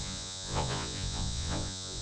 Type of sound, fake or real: fake